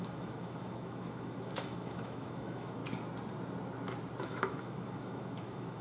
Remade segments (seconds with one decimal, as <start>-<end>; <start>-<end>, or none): 0.0-2.8; 4.2-5.8